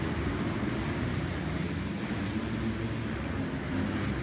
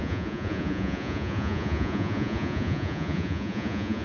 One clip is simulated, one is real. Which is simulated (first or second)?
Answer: second